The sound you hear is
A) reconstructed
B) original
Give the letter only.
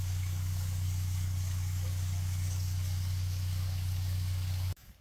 A